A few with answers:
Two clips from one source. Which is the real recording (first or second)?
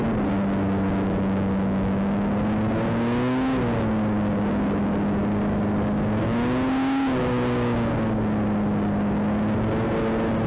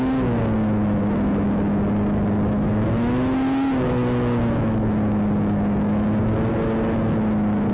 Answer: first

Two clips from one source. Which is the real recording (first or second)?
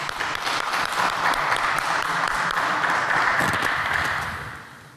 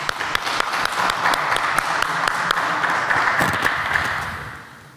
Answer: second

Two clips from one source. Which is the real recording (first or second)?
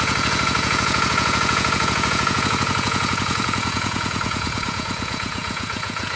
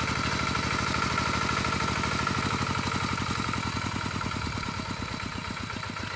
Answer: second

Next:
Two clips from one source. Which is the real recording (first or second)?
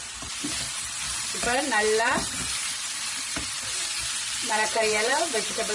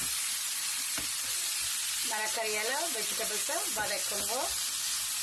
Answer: second